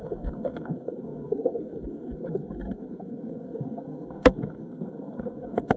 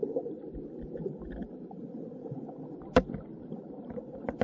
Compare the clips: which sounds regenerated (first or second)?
first